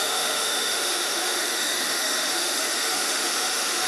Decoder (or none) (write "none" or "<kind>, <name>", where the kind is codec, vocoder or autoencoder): autoencoder, DAC-VAE